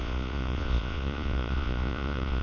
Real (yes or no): no